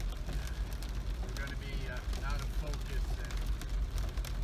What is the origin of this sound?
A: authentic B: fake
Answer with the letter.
A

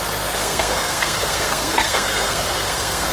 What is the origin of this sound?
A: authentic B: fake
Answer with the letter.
B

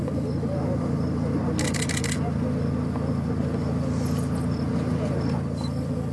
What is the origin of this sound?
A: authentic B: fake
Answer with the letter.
A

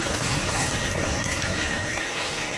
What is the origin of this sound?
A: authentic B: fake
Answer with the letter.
B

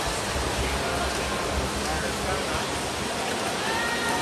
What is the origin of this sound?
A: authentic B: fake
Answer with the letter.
A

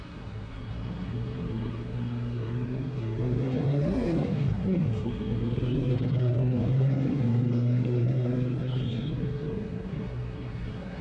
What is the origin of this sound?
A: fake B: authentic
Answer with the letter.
A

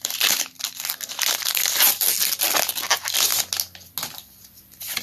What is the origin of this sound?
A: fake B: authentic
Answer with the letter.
B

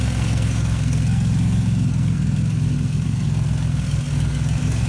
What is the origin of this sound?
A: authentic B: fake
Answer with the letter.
B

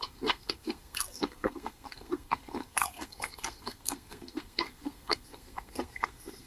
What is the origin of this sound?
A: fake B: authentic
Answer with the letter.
A